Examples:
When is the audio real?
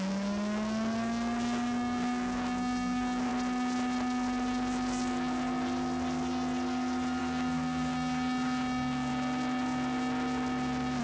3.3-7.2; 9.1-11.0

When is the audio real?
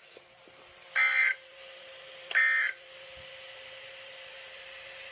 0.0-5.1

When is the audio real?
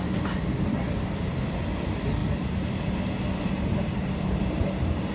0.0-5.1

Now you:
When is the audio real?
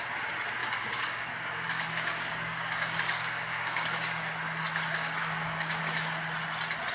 0.0-0.6; 4.2-4.9; 5.8-6.9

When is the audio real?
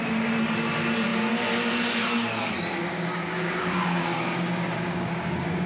0.0-2.8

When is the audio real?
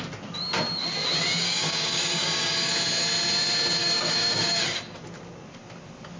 0.0-1.4; 2.7-3.8; 4.6-6.2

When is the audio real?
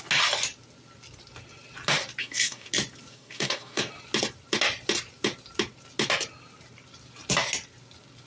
0.0-2.2; 2.7-3.1; 3.9-8.3